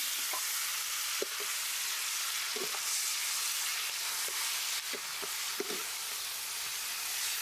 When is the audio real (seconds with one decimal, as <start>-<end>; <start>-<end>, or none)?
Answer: 0.0-7.4

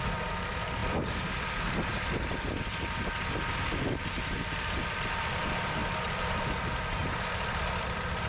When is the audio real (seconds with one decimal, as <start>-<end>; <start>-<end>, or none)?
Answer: 7.0-7.5

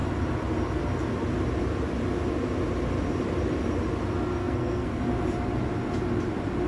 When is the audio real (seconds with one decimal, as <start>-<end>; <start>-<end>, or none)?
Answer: 0.0-4.4; 5.0-6.7